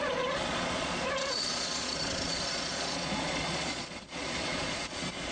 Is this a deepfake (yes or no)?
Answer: yes